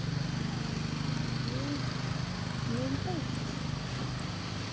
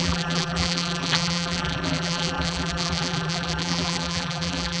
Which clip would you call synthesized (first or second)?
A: second